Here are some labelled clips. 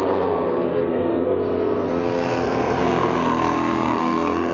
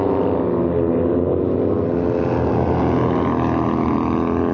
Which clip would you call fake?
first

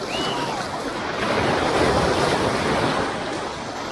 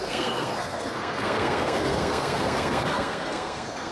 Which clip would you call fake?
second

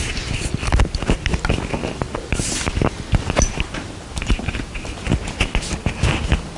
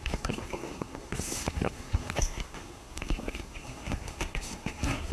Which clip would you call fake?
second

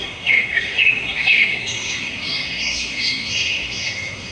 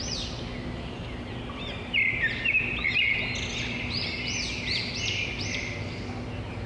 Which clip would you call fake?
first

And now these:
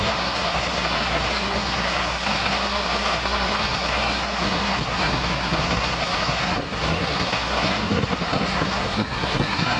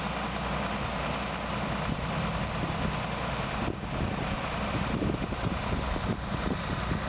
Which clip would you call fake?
first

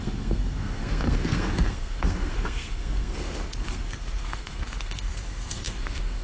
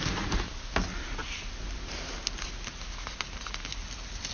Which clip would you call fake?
first